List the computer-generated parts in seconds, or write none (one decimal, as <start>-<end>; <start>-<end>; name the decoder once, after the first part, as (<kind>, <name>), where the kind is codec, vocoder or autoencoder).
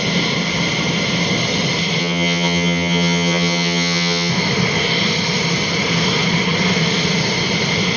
2.0-4.3 (vocoder, HiFi-GAN)